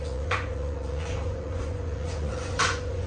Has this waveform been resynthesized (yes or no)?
yes